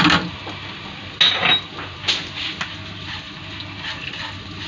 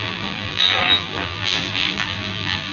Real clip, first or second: first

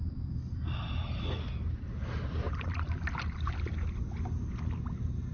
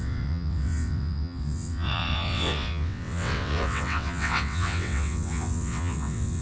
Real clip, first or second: first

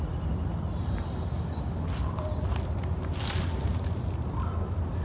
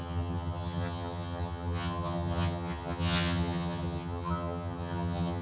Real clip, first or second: first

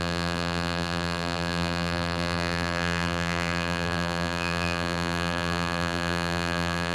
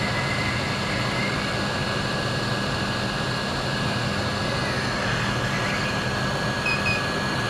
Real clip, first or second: second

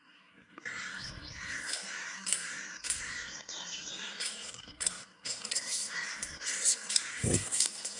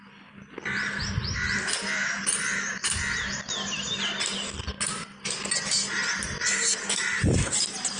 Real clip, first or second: second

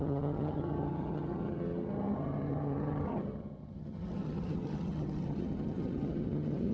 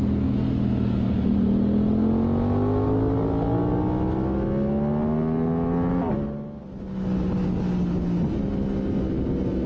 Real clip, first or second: second